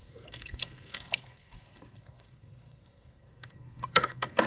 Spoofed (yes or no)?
yes